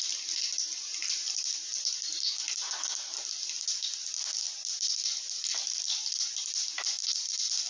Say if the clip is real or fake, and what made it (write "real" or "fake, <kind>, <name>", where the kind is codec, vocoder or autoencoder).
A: real